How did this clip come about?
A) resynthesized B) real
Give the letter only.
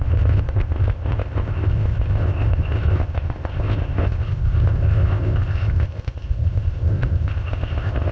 A